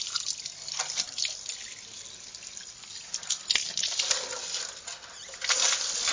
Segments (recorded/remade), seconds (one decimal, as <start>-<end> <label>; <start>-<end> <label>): 0.0-6.1 recorded